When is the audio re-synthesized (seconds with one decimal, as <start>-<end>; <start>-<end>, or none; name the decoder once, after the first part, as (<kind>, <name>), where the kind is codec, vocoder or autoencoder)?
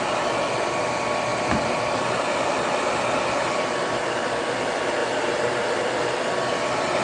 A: 1.3-2.2 (vocoder, BigVGAN v2); 5.0-5.7